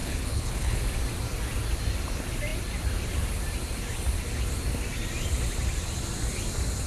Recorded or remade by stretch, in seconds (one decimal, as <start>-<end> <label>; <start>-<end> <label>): 0.0-0.8 remade; 0.8-6.9 recorded

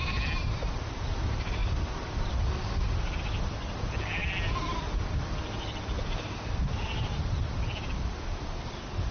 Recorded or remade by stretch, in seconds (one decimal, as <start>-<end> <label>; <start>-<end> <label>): 0.0-9.1 recorded

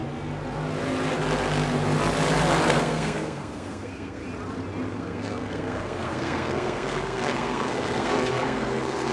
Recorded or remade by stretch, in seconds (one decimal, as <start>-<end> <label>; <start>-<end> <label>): 0.0-2.7 recorded; 2.7-4.2 remade; 4.2-4.9 recorded; 4.9-9.1 remade

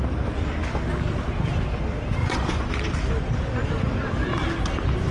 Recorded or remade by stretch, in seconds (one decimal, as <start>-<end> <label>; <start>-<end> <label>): 0.0-2.2 recorded; 2.2-2.7 remade; 2.7-5.1 recorded

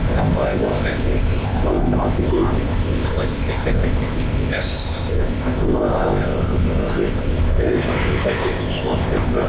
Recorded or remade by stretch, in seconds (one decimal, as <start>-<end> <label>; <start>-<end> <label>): 0.0-9.5 remade

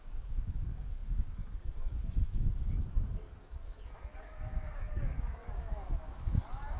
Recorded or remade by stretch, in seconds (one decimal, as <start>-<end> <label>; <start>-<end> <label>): 0.0-6.8 remade

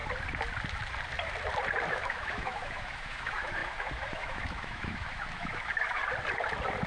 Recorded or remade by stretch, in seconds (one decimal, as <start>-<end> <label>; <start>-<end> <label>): 0.0-1.9 recorded; 1.9-6.0 remade; 6.0-6.9 recorded